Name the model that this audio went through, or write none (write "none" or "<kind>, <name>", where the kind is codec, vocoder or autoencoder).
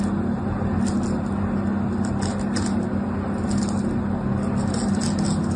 none